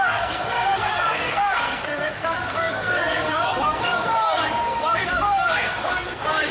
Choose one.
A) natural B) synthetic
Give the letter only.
B